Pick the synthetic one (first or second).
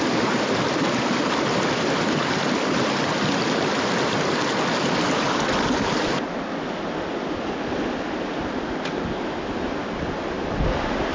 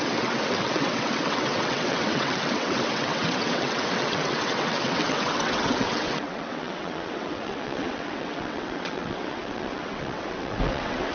second